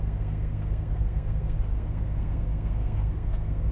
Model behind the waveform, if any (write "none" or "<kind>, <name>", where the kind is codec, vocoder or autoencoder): codec, SNAC